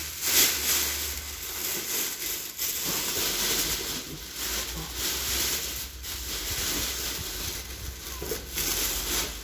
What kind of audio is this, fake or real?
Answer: real